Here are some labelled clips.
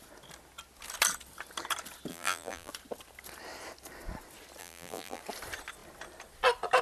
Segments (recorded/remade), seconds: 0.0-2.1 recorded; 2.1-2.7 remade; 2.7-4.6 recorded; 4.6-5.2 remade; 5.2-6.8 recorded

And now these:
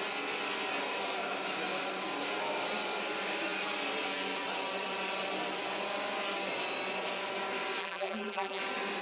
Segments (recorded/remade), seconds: 0.0-7.8 recorded; 7.8-8.6 remade; 8.6-9.0 recorded